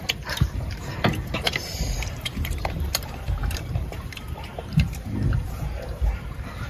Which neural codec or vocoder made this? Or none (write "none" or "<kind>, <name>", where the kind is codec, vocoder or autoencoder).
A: vocoder, BigVGAN v2